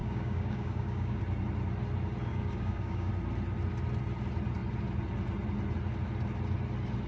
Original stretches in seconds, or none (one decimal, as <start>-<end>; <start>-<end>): 1.2-2.3; 3.1-7.1